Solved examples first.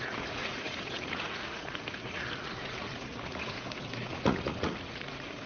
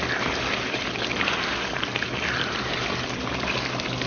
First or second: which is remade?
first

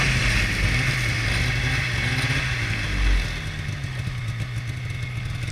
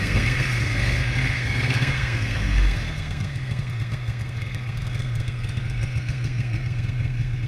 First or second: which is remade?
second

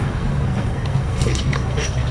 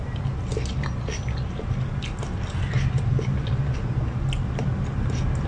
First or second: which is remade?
first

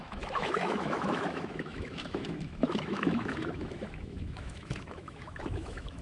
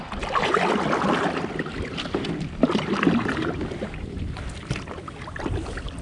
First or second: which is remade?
first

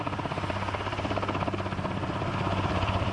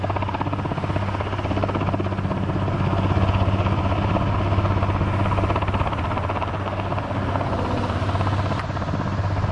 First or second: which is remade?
first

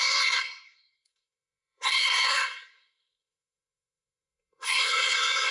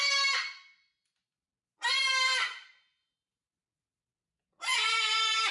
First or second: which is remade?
first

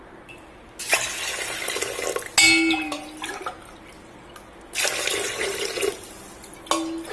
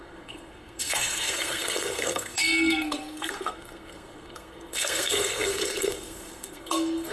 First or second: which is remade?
second